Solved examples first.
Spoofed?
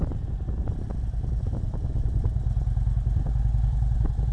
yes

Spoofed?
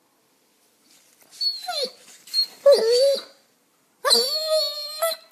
no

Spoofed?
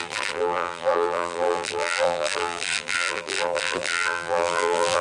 yes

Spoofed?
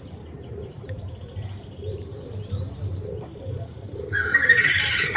yes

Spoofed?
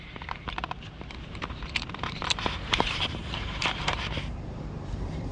yes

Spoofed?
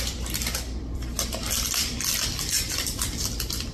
yes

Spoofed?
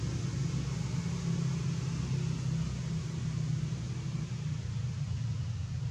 no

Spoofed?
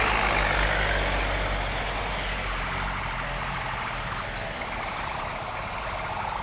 no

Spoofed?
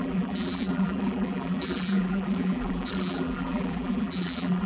yes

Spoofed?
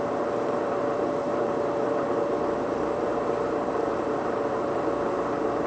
yes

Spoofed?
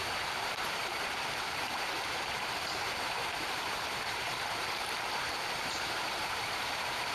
yes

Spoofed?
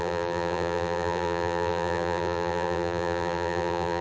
yes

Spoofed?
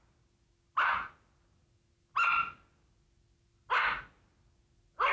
no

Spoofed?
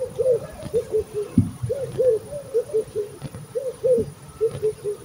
yes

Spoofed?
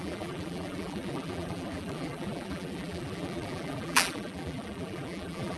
yes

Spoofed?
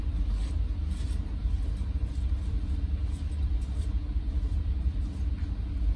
no